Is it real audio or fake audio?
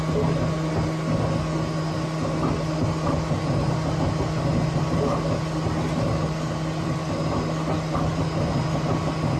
real